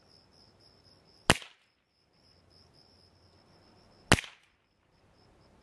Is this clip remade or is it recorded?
recorded